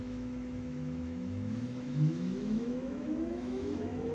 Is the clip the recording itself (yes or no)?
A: no